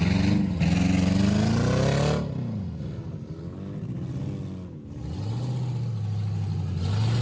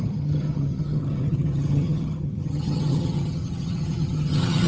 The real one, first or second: first